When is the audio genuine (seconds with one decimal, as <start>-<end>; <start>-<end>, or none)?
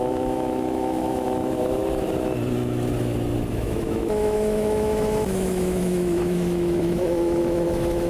1.8-3.5